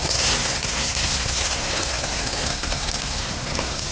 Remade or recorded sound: remade